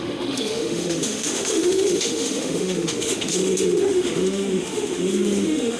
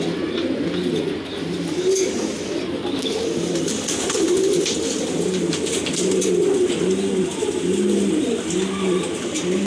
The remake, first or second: first